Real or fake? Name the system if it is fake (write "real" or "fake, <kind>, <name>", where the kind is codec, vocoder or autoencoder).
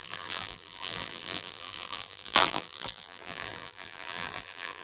fake, vocoder, BigVGAN v2